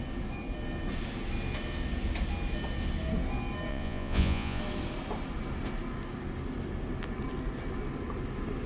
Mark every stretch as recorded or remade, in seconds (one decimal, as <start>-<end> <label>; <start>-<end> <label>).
0.0-3.7 recorded; 3.7-4.6 remade; 4.6-8.7 recorded